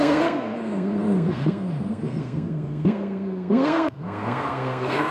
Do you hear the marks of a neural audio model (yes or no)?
yes